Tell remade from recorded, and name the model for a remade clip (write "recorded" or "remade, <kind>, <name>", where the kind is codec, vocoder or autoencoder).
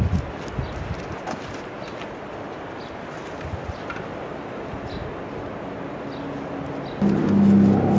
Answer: recorded